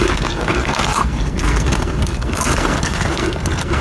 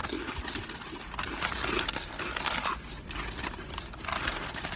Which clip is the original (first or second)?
second